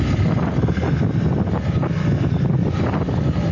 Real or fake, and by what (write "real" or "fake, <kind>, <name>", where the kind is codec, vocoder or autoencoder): real